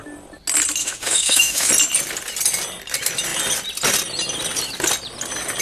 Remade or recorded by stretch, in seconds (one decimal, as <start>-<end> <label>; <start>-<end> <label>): 0.0-0.8 recorded; 0.8-1.7 remade; 1.7-5.6 recorded